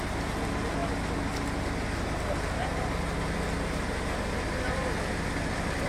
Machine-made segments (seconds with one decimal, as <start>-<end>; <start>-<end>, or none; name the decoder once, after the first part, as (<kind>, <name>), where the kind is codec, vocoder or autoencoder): none